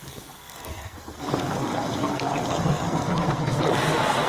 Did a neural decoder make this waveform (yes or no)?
yes